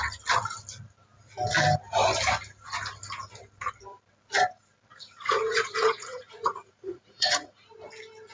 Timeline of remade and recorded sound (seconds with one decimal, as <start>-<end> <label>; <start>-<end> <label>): 0.0-4.9 recorded; 4.9-7.7 remade; 7.7-8.3 recorded